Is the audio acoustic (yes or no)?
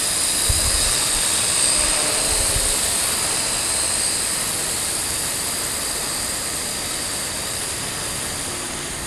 yes